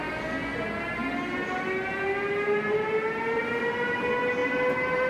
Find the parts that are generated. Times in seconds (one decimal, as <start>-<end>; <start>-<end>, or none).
none